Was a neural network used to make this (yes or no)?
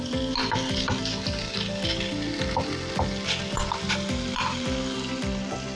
no